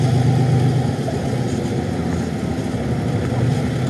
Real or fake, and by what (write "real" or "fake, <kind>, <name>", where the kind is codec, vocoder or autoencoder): real